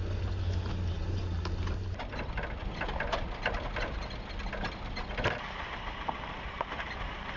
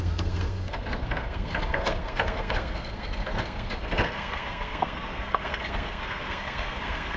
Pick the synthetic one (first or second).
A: second